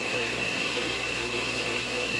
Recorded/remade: remade